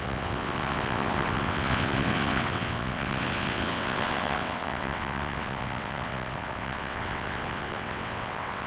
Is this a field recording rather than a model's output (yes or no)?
no